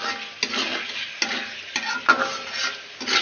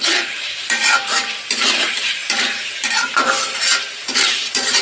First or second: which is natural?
first